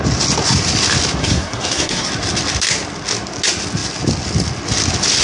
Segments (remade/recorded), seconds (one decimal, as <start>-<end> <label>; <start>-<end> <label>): 0.0-1.2 recorded; 1.2-2.1 remade; 2.1-5.2 recorded